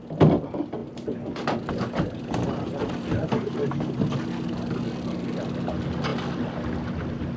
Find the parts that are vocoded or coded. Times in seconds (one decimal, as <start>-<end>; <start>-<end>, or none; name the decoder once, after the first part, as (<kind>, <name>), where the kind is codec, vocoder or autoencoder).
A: none